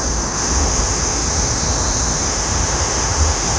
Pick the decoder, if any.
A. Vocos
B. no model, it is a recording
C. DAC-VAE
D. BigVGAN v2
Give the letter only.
C